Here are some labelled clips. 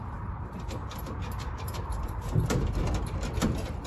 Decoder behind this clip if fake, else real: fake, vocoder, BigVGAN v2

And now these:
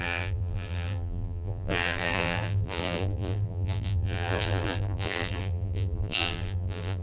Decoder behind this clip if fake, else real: fake, vocoder, BigVGAN v2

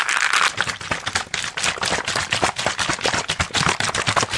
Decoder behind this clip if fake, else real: real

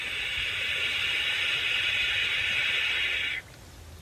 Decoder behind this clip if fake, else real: real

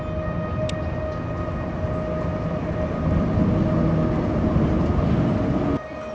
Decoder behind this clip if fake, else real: real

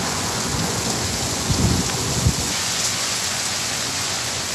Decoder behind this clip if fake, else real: fake, vocoder, Vocos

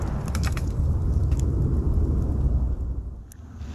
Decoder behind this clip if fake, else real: real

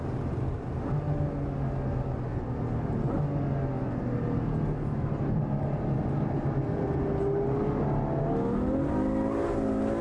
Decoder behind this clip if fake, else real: real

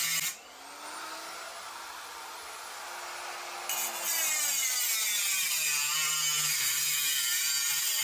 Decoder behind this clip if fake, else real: real